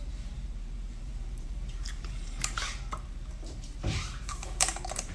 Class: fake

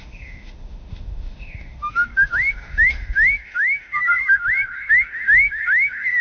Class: fake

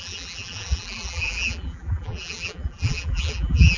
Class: fake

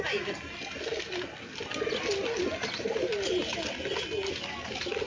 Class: real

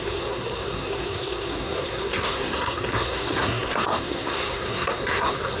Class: fake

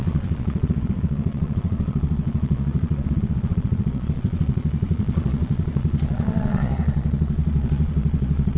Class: fake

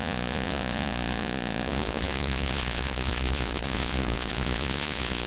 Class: fake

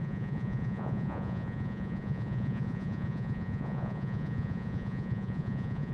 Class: fake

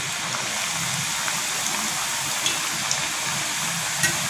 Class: real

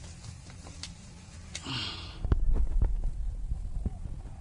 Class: real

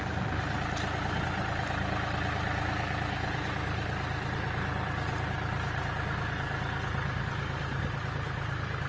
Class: real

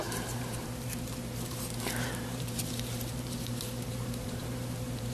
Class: fake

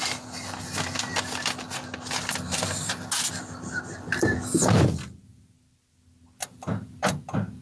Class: real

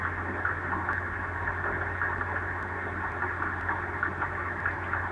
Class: real